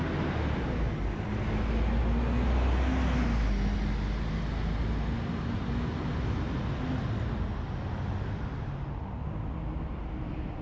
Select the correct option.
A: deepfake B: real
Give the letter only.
B